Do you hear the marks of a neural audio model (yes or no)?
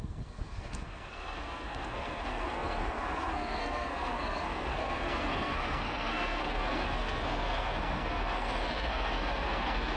yes